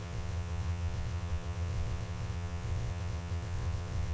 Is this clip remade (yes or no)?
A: yes